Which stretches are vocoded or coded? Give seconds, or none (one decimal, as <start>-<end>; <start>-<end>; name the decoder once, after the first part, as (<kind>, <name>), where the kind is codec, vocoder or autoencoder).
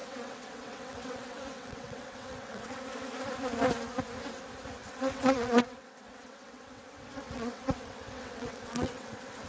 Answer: 0.0-2.8 (vocoder, WaveNeXt); 4.8-9.5